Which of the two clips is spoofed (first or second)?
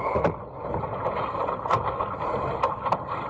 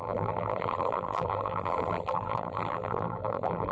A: second